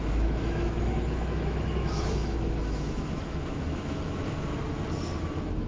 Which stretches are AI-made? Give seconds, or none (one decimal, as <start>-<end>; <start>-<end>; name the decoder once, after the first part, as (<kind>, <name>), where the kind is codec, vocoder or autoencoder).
0.0-4.5 (autoencoder, DAC-VAE); 5.2-5.7